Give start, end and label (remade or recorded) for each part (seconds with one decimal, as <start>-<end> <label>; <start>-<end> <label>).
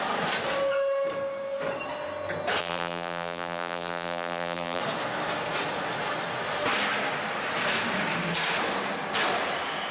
0.0-2.6 recorded; 2.6-4.8 remade; 4.8-9.9 recorded